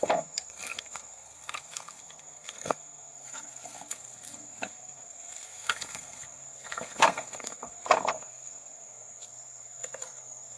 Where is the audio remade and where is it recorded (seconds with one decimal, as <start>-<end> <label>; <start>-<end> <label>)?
0.0-10.6 remade